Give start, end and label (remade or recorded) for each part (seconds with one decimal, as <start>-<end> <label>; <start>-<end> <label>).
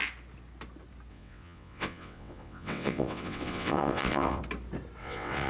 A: 0.0-1.1 recorded; 1.1-4.4 remade; 4.4-5.0 recorded; 5.0-5.5 remade